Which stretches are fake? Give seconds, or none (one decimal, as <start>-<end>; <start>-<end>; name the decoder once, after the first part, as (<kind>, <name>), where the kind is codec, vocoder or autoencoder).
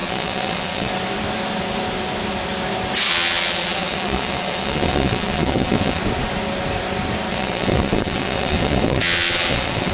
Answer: 0.0-0.9 (vocoder, WaveNeXt); 3.1-6.0; 7.3-9.9